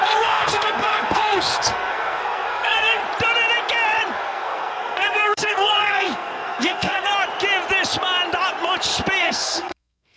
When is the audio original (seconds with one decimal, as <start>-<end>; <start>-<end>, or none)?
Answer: 3.0-4.1; 7.1-9.2